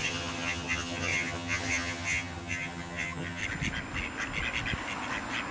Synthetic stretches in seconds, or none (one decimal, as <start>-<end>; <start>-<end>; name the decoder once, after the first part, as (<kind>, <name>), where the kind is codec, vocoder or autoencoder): 0.0-3.4 (vocoder, HiFi-GAN)